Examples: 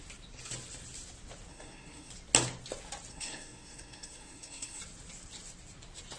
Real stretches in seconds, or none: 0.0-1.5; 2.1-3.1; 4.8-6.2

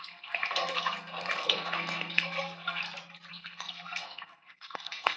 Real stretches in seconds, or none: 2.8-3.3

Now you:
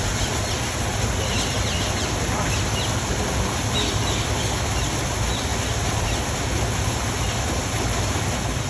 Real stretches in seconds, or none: 0.0-8.7